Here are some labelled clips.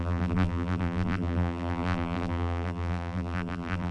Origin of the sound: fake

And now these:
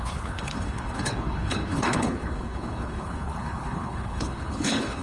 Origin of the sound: fake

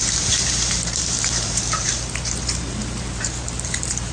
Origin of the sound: fake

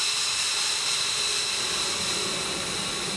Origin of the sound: real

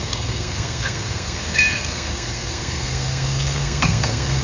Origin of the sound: fake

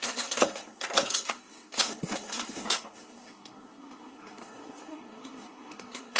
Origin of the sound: fake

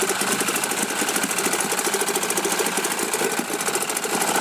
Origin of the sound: real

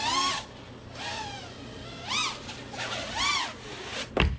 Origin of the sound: real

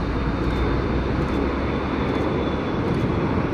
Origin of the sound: real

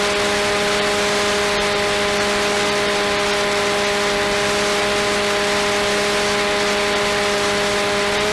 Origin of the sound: real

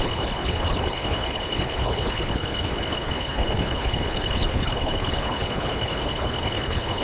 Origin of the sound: fake